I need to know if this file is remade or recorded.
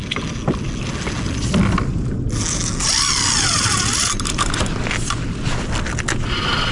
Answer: recorded